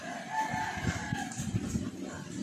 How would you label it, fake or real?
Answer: real